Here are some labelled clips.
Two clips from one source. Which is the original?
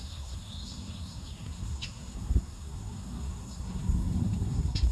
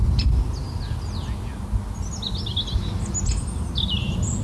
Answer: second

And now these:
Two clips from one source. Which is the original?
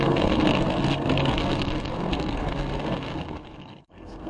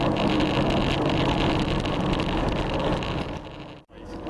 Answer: second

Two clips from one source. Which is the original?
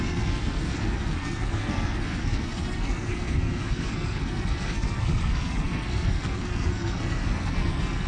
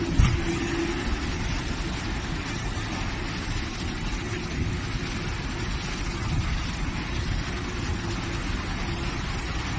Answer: second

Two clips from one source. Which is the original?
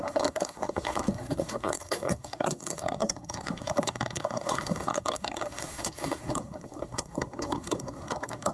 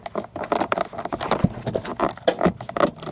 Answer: second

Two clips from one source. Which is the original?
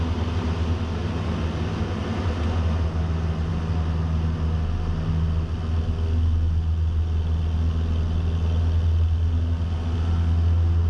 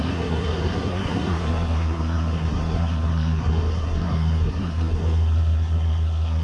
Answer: first